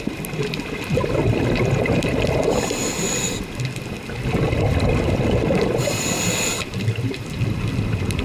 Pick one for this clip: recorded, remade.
recorded